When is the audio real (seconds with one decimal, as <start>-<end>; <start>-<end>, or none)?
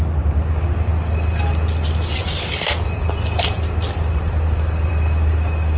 0.0-5.8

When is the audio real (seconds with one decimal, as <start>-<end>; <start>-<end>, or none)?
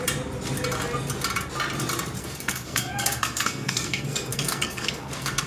0.0-2.2